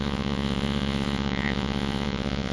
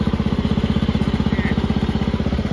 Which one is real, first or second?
second